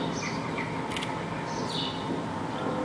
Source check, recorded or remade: recorded